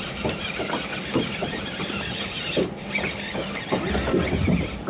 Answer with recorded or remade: recorded